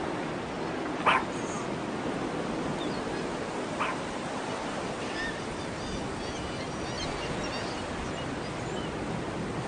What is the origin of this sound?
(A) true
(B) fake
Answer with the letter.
A